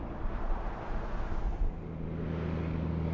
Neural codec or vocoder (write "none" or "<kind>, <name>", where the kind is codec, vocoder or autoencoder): none